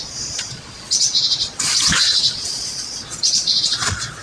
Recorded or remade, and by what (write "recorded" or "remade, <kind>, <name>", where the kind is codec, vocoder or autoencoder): remade, vocoder, Vocos